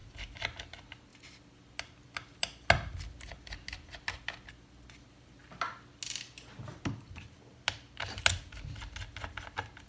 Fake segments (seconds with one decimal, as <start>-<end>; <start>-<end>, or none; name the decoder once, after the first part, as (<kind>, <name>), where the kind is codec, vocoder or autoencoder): none